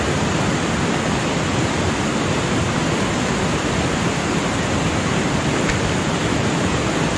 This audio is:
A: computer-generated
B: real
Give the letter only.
B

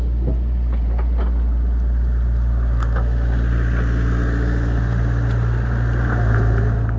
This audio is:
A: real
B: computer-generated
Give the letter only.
A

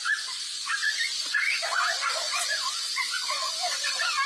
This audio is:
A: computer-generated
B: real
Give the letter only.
A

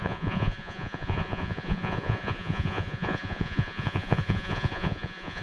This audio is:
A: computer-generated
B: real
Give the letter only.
A